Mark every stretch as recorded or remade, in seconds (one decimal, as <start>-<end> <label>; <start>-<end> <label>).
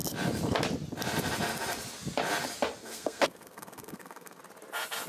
0.0-2.8 recorded; 2.8-4.4 remade; 4.4-5.1 recorded